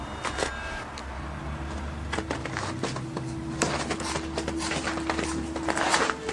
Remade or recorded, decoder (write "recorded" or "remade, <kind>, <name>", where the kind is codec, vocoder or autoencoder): recorded